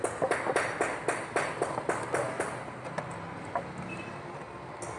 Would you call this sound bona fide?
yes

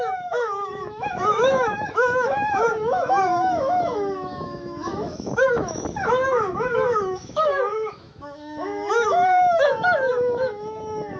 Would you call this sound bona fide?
no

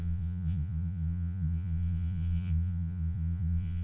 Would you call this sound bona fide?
no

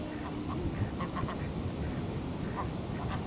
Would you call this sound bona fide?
yes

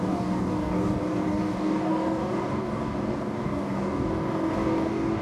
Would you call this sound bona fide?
no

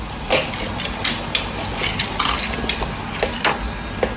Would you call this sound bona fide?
yes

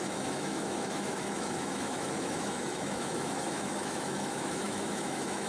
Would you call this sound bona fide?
no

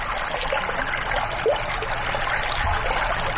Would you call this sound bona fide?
yes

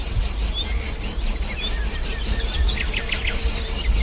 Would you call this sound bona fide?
yes